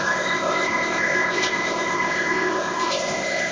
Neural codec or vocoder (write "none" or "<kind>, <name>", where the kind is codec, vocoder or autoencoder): codec, ZipCodec